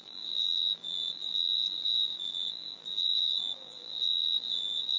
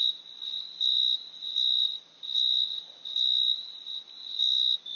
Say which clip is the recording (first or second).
second